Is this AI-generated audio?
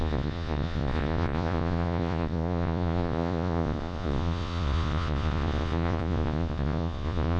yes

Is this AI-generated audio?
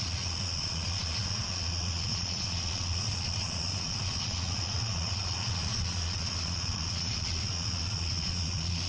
yes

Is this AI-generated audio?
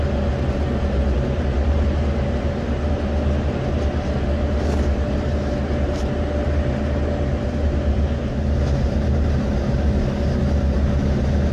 no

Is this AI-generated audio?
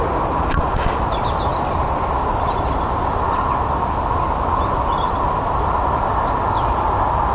no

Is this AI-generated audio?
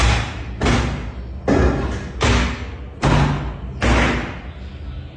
no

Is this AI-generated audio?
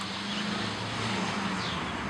no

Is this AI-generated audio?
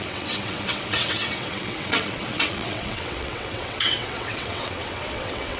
yes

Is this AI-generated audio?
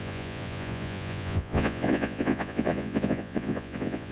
yes